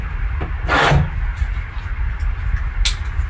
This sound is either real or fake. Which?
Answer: real